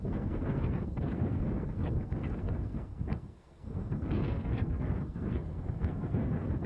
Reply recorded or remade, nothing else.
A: remade